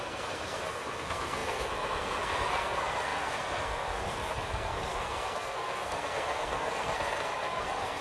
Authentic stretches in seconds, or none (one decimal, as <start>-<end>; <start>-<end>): none